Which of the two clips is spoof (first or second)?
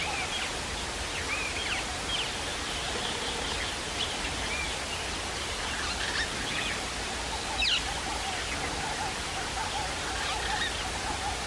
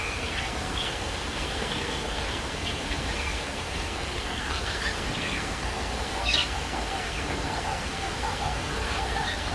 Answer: second